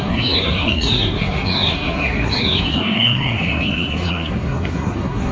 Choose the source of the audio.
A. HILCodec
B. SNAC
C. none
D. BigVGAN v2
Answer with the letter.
B